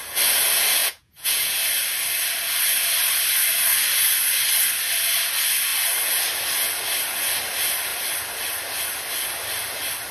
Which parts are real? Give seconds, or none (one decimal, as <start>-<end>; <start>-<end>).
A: 0.0-0.8; 1.6-10.1